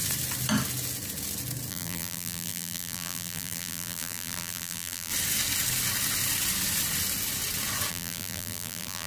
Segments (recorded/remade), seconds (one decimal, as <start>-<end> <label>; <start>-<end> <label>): 0.0-1.7 recorded; 1.7-5.1 remade; 5.1-7.9 recorded; 7.9-9.1 remade